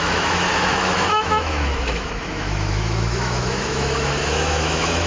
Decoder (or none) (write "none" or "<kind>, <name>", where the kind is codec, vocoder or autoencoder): autoencoder, DAC-VAE